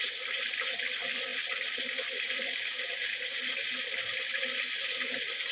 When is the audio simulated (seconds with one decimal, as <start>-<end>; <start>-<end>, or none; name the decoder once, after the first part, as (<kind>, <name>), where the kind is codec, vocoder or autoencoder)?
1.3-4.6 (vocoder, BigVGAN v2)